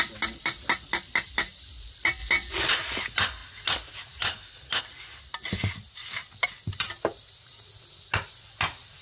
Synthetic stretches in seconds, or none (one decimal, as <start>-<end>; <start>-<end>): none